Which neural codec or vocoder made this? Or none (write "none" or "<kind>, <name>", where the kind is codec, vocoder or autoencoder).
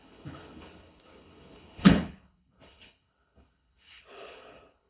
codec, HILCodec